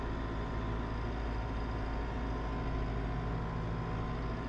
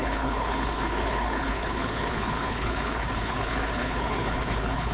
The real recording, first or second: first